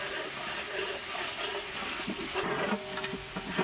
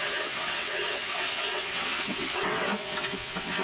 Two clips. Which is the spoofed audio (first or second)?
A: second